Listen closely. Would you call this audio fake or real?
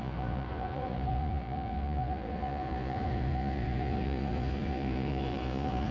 fake